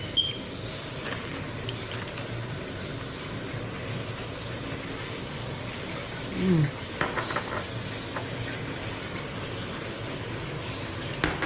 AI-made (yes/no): no